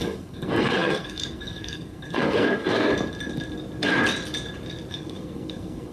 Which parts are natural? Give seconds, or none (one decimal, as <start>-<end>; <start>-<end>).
2.9-4.9